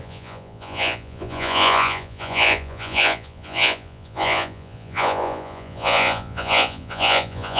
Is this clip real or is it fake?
fake